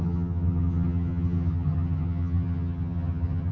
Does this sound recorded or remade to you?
remade